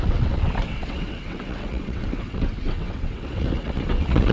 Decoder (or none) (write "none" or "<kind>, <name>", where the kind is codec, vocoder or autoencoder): vocoder, WaveNeXt